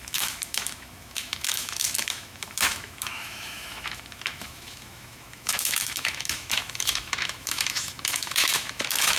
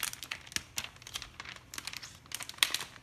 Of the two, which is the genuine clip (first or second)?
second